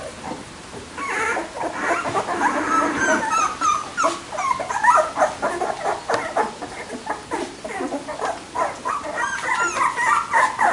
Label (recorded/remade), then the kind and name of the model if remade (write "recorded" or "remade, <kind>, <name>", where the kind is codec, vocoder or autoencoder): recorded